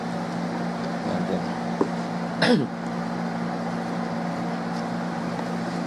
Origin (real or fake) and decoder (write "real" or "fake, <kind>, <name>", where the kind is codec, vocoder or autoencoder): real